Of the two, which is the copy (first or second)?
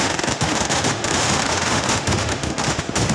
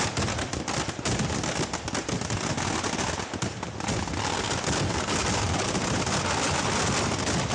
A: first